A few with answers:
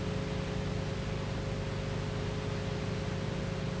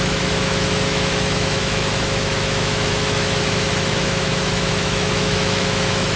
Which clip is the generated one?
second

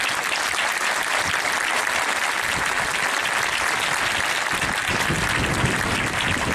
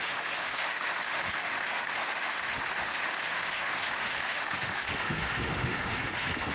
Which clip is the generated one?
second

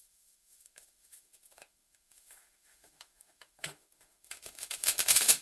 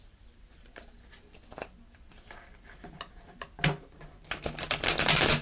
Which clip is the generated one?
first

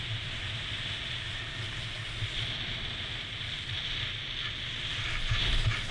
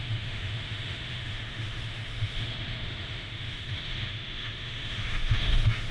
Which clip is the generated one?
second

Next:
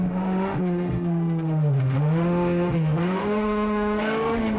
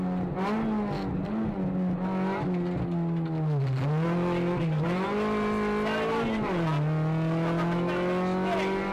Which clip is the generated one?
first